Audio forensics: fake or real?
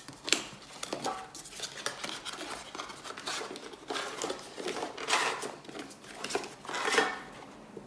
real